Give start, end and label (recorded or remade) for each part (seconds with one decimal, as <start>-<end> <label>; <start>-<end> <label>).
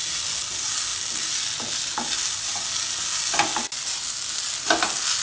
0.0-5.2 recorded